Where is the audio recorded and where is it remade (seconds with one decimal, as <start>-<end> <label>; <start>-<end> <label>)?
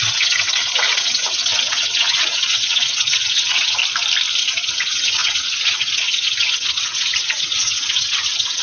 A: 0.0-3.8 remade; 3.8-4.4 recorded; 4.4-8.6 remade